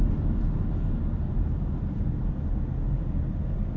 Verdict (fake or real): real